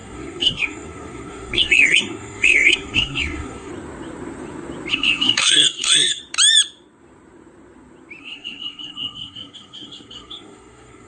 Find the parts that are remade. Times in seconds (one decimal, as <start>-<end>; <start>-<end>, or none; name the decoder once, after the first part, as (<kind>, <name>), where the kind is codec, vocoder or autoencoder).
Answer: 0.0-3.7 (codec, SNAC); 4.9-6.2; 8.2-11.1